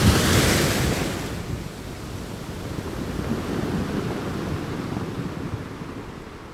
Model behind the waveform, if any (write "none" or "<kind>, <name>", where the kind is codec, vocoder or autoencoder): none